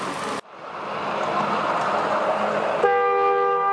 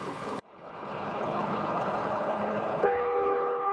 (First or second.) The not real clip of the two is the second